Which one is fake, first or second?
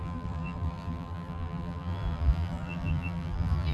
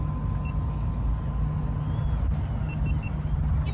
first